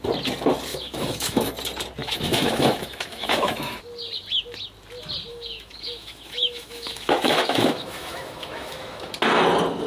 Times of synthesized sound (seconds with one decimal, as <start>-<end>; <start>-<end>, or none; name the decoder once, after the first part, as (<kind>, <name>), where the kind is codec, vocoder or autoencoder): 0.7-1.5 (autoencoder, DAC-VAE); 2.0-3.8; 5.3-9.1